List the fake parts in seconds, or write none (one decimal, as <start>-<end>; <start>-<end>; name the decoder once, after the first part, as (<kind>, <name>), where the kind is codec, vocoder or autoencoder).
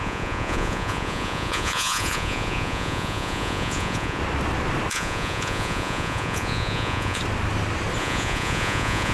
0.0-4.2 (vocoder, Vocos); 4.9-7.2; 8.0-9.1